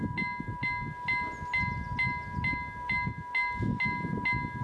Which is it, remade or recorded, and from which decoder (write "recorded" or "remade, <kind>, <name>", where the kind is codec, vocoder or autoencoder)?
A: recorded